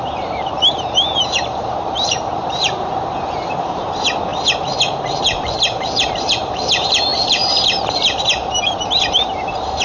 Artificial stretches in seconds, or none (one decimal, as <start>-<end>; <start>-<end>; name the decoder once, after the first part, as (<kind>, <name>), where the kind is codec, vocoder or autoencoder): 0.0-4.3 (vocoder, BigVGAN v2); 5.1-9.8